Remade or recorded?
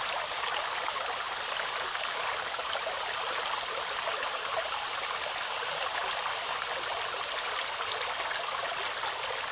recorded